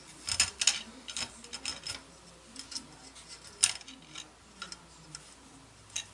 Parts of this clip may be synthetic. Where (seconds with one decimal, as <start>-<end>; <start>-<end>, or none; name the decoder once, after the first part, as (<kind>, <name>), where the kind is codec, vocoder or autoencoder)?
none